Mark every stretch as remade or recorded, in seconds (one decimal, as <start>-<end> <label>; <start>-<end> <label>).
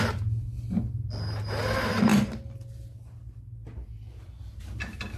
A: 0.0-5.2 recorded